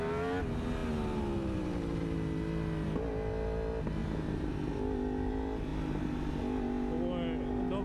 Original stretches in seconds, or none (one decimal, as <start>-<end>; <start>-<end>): 0.0-7.8